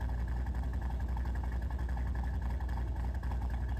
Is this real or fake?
real